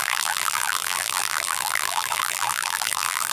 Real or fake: fake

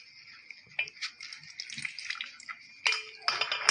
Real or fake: real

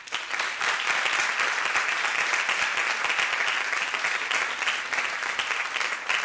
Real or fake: real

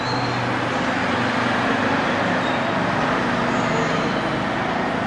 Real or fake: real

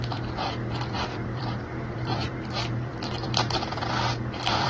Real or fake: fake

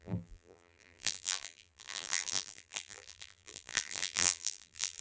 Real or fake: fake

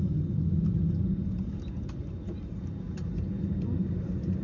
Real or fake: real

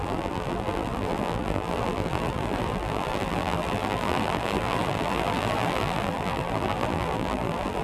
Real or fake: fake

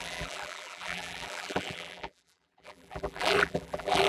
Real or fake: fake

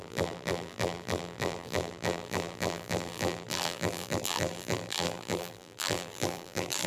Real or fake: fake